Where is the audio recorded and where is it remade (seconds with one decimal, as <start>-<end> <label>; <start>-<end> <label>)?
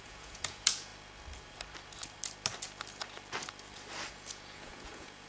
0.0-0.9 remade; 0.9-4.1 recorded; 4.1-5.3 remade